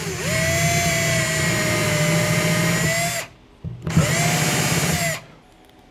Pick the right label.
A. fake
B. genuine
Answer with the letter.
B